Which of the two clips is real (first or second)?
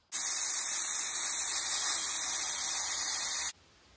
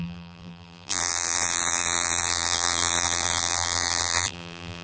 first